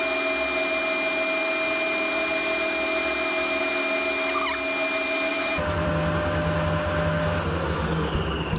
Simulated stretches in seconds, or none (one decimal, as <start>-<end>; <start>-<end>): 5.3-5.9